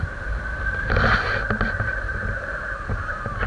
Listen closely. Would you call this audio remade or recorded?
remade